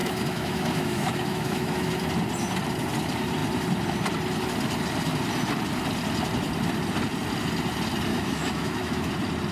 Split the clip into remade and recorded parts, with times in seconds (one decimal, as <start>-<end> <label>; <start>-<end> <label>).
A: 0.0-1.9 remade; 1.9-8.1 recorded; 8.1-9.1 remade; 9.1-9.5 recorded